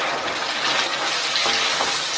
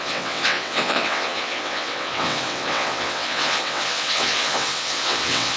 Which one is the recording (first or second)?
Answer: first